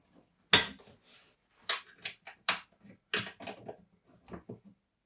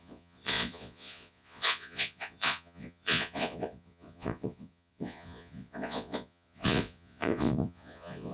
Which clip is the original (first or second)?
first